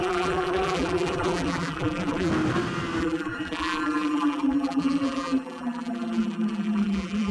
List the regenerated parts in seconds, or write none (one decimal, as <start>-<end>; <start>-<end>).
0.0-2.3; 3.0-7.3